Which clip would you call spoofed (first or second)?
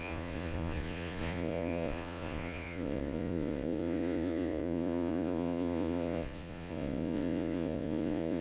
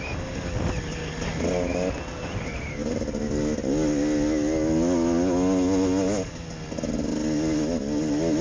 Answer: first